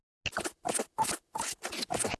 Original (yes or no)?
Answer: yes